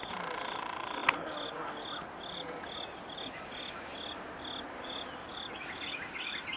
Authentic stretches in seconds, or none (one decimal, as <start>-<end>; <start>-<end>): 0.0-6.6